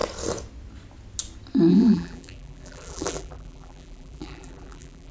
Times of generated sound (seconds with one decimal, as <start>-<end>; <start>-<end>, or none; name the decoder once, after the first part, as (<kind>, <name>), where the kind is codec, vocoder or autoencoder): 1.7-5.1 (vocoder, BigVGAN v2)